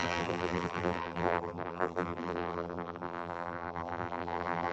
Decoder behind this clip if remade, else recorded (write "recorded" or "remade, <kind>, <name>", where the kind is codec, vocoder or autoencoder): remade, vocoder, BigVGAN v2